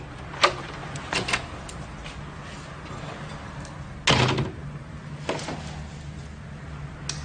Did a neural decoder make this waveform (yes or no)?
no